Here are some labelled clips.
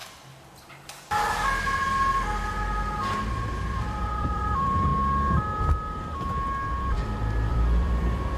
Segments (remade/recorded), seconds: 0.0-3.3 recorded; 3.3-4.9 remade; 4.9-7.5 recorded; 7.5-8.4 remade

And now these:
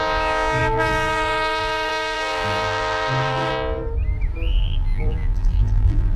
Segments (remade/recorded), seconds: 0.0-0.6 recorded; 0.6-3.5 remade; 3.5-4.6 recorded; 4.6-6.2 remade

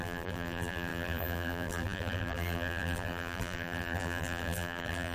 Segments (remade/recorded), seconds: 0.0-5.1 remade

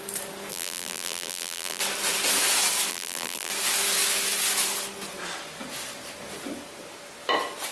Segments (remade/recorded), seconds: 0.0-0.5 recorded; 0.5-1.8 remade; 1.8-2.9 recorded; 2.9-3.5 remade; 3.5-7.7 recorded